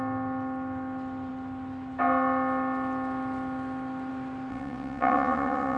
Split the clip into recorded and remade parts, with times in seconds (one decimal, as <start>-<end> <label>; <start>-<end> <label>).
0.0-4.5 recorded; 4.5-5.8 remade